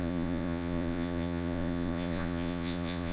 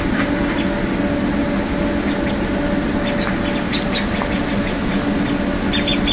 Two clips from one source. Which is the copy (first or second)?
first